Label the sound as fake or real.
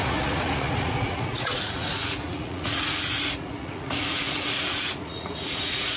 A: fake